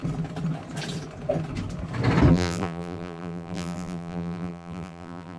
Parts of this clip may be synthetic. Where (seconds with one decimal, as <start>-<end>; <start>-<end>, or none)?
2.3-5.4